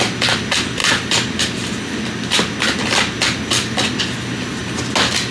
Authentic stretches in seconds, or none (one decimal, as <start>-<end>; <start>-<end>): 0.0-5.3